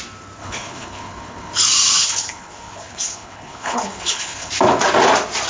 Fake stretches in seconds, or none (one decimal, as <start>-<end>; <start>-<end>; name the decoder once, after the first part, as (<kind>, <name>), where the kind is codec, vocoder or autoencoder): 0.4-1.6 (codec, HILCodec); 2.0-4.5